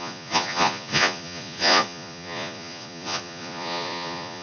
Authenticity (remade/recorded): remade